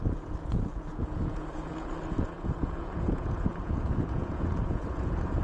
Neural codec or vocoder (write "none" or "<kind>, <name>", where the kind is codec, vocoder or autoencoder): vocoder, Vocos